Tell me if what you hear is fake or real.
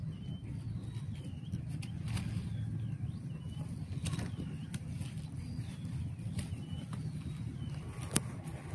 real